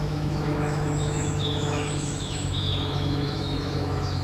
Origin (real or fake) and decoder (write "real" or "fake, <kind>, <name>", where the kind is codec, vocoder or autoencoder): fake, autoencoder, DAC-VAE